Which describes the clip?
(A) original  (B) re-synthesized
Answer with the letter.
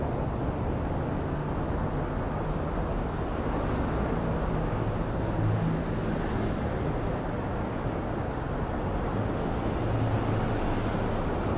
A